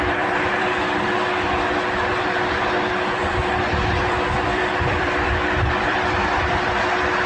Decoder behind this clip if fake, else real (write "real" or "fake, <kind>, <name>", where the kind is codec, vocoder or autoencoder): fake, vocoder, BigVGAN v2